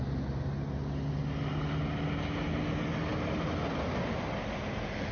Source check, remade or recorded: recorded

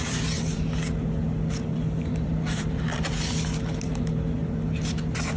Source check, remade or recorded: recorded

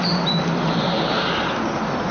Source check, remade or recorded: recorded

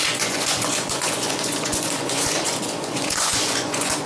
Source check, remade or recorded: remade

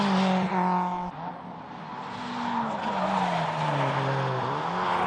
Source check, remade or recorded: recorded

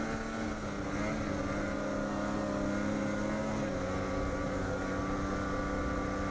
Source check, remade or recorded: recorded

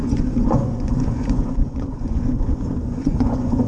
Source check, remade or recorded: remade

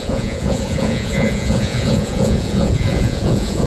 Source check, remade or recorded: remade